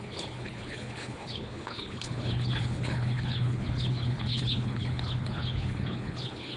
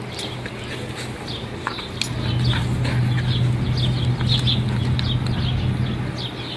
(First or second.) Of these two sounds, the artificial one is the first